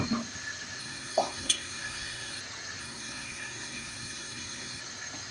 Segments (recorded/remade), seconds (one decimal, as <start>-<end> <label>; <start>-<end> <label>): 0.0-0.8 recorded; 0.8-2.4 remade; 2.4-2.8 recorded; 2.8-4.8 remade; 4.8-5.3 recorded